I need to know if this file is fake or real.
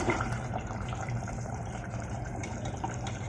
fake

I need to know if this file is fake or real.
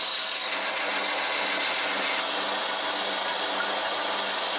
real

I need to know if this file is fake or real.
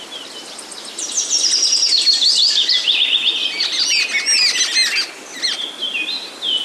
real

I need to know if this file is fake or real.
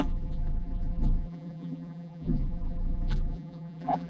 fake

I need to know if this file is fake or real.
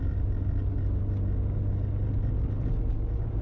real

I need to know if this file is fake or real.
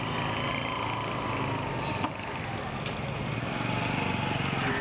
real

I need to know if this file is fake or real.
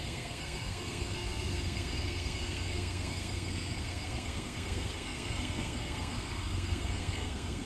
fake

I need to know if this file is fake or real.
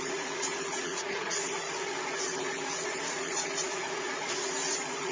fake